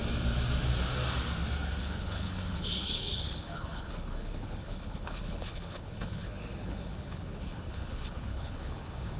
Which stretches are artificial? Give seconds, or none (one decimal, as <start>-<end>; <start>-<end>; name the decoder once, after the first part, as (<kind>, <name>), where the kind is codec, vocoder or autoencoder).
1.8-9.2 (codec, HILCodec)